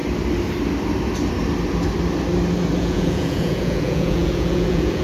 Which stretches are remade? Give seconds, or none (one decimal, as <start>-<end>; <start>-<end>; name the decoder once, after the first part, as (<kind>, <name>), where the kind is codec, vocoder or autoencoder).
2.8-5.0 (vocoder, Vocos)